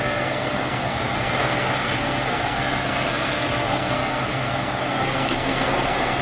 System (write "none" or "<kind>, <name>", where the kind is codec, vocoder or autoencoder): codec, SNAC